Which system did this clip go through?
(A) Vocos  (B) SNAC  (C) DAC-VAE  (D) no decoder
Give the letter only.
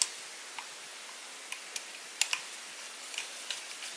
D